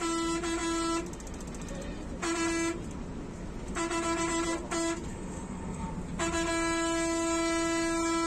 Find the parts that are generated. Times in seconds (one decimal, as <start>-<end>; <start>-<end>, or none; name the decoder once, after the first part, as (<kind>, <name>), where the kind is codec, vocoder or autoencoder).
5.1-5.9 (codec, DAC)